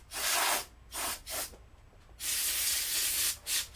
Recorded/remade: recorded